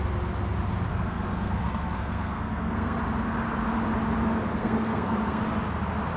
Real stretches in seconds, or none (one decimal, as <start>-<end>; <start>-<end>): 0.0-0.9; 3.0-4.5; 5.4-6.2